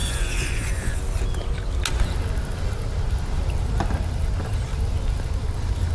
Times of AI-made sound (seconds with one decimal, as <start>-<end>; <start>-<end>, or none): 0.0-1.0